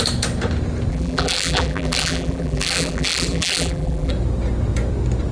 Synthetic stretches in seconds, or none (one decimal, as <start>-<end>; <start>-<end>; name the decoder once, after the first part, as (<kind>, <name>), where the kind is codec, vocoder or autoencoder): 0.9-4.1 (vocoder, BigVGAN v2)

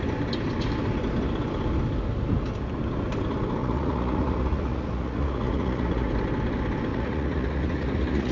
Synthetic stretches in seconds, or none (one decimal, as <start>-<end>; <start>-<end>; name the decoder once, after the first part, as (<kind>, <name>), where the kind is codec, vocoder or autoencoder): 3.6-6.1 (vocoder, Vocos); 6.9-8.3

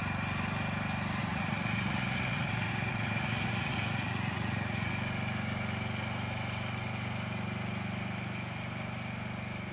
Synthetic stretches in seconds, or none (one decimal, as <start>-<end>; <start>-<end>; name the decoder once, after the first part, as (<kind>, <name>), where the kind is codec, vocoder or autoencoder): 1.2-4.9 (vocoder, Vocos)

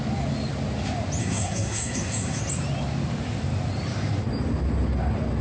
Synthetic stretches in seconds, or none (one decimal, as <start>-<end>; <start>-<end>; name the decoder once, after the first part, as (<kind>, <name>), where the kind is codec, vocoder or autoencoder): 1.2-2.4 (codec, SNAC)

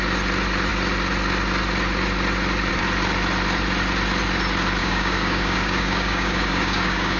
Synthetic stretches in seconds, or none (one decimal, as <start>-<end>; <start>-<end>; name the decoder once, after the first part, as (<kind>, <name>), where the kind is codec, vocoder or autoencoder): 4.8-7.2 (codec, DAC)

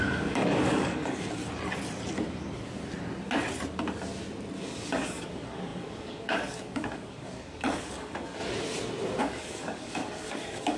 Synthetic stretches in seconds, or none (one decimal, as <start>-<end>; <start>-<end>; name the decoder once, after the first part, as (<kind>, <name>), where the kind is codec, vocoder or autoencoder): 0.0-1.4 (codec, DAC); 4.6-8.4; 9.2-10.8